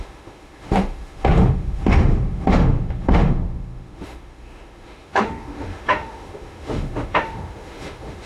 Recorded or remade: remade